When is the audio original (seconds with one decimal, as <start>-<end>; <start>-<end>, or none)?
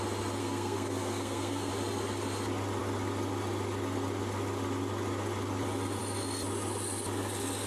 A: 0.0-0.4; 1.7-7.7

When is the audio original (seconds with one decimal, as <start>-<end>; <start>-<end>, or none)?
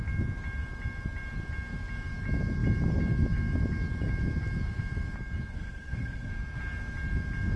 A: 0.0-5.5; 6.3-7.6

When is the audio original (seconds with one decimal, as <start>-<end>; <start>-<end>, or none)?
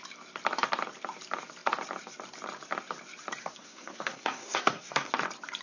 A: 0.0-3.4; 5.1-5.6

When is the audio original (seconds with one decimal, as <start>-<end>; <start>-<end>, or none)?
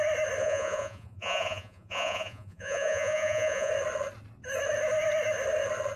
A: 0.0-0.4; 3.7-6.0